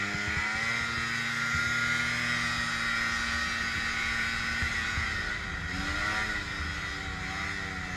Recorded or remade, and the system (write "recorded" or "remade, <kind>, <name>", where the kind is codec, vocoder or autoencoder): recorded